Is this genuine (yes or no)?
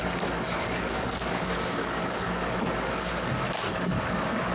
no